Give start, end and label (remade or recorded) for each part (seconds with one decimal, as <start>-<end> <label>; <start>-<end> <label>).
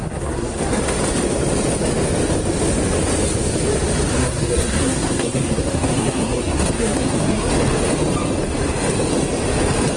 0.0-0.6 remade; 0.6-4.2 recorded; 4.2-7.5 remade; 7.5-10.0 recorded